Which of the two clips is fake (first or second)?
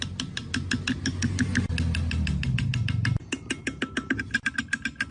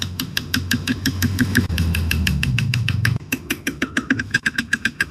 second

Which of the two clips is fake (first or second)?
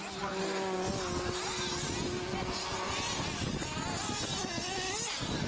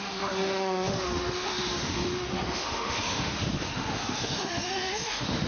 second